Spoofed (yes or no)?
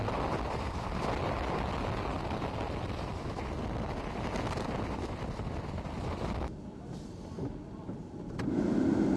no